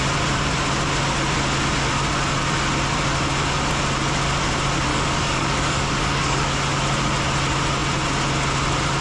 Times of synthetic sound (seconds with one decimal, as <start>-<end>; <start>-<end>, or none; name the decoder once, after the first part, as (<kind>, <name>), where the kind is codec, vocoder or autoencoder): 4.9-6.6 (codec, DAC)